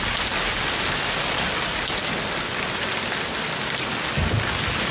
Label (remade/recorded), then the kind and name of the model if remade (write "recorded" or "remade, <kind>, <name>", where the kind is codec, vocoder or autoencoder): recorded